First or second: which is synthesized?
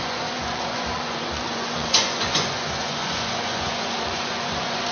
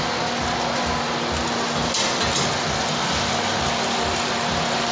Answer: first